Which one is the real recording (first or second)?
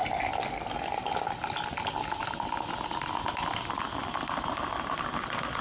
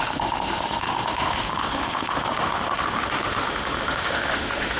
first